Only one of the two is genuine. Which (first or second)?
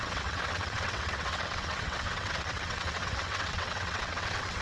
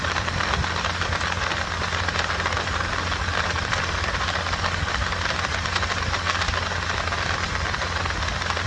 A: second